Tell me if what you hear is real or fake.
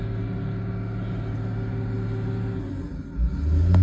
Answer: real